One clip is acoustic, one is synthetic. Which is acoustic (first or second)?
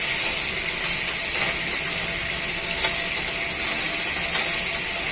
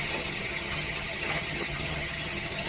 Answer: first